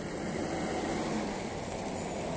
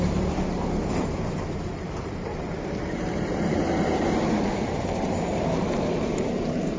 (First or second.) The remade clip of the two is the second